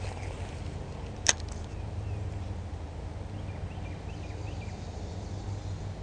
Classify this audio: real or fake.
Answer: real